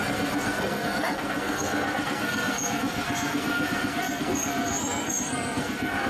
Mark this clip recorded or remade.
remade